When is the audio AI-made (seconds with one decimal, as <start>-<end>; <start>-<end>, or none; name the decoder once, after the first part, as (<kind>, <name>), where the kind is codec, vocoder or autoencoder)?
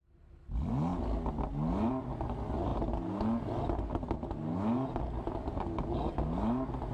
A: none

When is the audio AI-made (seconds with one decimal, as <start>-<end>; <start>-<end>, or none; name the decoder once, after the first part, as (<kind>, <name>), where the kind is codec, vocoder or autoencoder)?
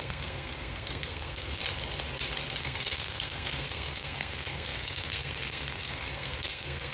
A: 0.0-1.6 (codec, SNAC); 2.6-6.9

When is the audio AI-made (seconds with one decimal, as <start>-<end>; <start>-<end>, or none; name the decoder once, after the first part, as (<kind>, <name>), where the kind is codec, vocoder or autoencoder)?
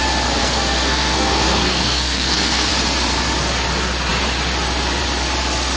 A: 0.4-2.7 (codec, SNAC)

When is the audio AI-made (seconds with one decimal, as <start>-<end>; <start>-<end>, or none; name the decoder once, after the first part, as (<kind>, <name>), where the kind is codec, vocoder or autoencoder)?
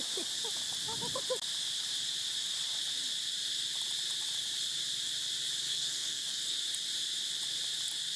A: 5.7-6.6 (codec, SNAC)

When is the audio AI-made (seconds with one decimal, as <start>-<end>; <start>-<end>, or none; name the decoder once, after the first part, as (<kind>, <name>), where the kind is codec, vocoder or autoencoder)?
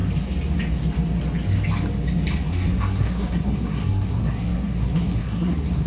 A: 2.5-5.9 (codec, SNAC)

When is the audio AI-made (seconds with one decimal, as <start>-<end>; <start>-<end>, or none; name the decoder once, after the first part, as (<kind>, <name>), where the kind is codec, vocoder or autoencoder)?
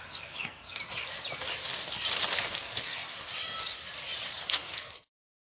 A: 0.0-0.8 (codec, SNAC); 2.4-3.3; 4.4-5.4